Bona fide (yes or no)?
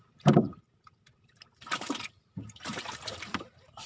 no